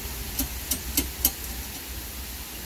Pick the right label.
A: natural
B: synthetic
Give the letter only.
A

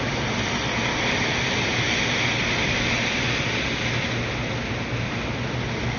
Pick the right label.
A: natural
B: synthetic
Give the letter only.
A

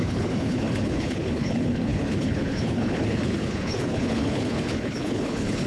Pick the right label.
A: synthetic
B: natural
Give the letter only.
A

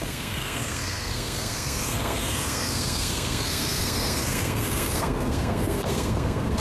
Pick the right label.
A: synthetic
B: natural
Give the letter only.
A